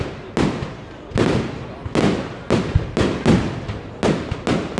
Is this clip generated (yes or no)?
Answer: no